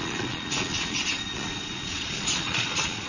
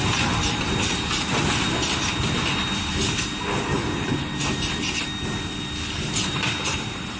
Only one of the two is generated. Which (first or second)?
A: first